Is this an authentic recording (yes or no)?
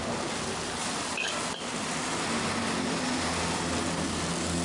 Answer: yes